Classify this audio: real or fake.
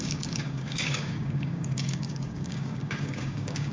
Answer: fake